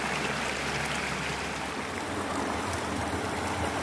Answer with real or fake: real